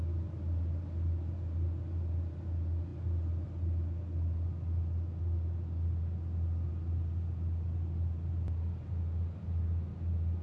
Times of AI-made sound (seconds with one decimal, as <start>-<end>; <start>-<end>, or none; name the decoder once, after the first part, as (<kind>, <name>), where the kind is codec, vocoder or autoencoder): none